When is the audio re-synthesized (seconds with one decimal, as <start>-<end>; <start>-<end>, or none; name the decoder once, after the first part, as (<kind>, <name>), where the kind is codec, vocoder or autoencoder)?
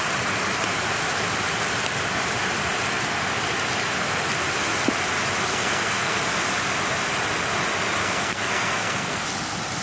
5.5-6.2 (codec, SNAC); 8.0-9.2